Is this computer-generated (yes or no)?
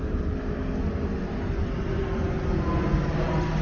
no